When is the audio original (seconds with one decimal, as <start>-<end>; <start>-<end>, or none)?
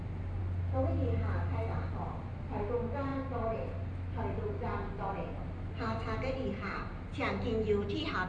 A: 0.0-8.3